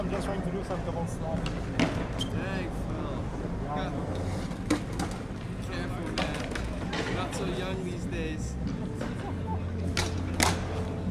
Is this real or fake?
real